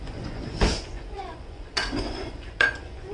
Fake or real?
fake